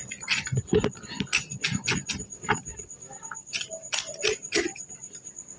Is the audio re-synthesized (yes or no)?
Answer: no